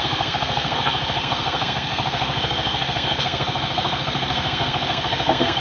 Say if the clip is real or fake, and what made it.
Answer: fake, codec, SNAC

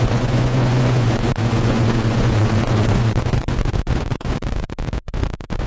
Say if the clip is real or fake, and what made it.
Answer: fake, vocoder, Vocos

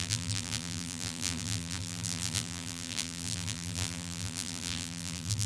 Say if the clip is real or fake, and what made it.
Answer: fake, vocoder, BigVGAN v2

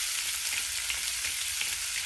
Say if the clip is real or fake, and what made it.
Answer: real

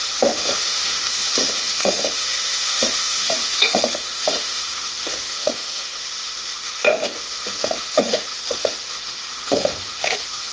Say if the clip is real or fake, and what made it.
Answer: fake, autoencoder, DAC-VAE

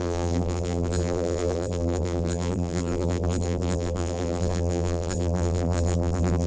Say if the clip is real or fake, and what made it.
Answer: fake, vocoder, BigVGAN v2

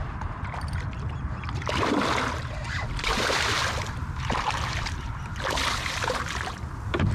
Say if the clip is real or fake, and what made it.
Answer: fake, vocoder, BigVGAN v2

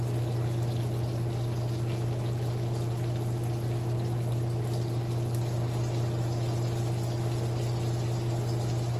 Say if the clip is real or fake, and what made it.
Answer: real